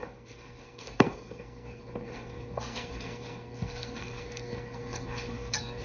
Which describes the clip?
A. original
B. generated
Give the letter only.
B